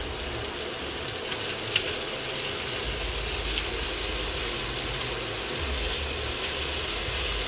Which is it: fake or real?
real